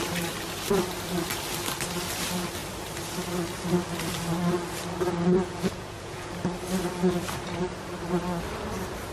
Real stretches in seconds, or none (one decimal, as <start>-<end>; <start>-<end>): 0.0-5.4; 6.3-9.1